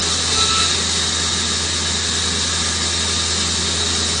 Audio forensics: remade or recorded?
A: recorded